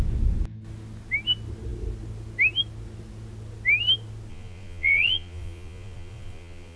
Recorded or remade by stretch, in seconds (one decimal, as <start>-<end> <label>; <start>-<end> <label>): 0.0-4.3 recorded; 4.3-6.8 remade